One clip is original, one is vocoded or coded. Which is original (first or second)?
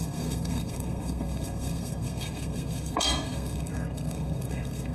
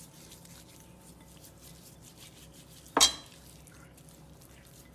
second